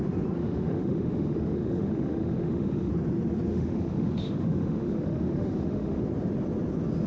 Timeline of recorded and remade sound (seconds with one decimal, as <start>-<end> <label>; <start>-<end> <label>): 0.0-0.4 recorded; 0.4-2.9 remade; 2.9-3.5 recorded; 3.5-6.0 remade; 6.0-7.1 recorded